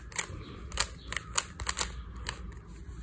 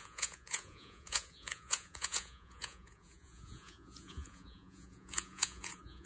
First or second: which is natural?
first